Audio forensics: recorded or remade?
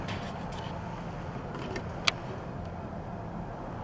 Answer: recorded